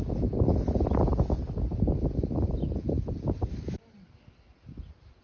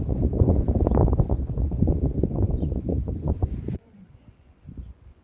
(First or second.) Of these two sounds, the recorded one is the first